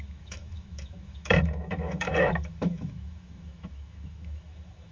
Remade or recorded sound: remade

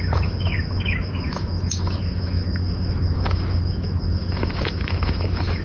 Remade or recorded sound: remade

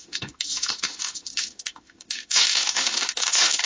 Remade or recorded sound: remade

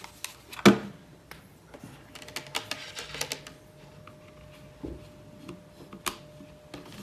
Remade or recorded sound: recorded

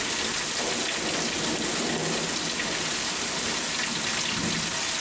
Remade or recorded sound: recorded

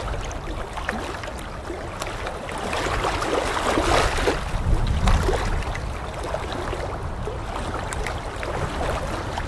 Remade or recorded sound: recorded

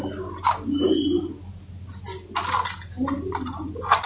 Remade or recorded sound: recorded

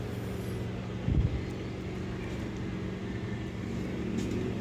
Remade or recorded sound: recorded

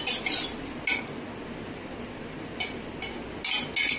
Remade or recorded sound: recorded